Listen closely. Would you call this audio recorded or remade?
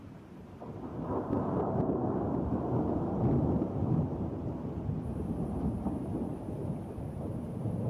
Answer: remade